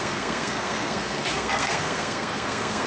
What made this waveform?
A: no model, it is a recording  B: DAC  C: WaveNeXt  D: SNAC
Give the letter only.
D